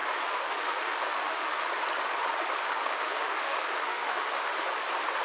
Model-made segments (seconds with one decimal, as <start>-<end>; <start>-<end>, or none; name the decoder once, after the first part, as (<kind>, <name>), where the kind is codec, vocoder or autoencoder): 0.0-1.7 (autoencoder, DAC-VAE); 2.7-4.5